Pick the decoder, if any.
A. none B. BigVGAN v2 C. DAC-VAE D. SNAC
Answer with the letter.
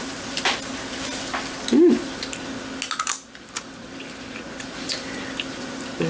A